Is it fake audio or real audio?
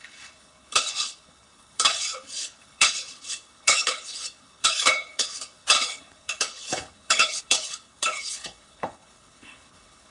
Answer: fake